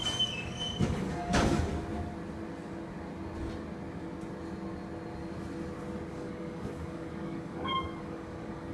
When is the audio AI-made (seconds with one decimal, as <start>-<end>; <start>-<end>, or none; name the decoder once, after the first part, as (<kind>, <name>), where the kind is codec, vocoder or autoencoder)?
0.0-1.7 (codec, DAC); 6.1-8.7